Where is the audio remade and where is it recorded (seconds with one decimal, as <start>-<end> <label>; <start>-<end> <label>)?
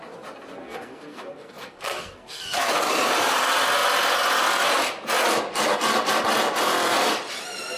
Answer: 0.0-0.6 recorded; 0.6-2.8 remade; 2.8-7.8 recorded